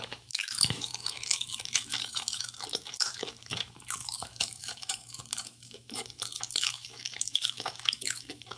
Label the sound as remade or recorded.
remade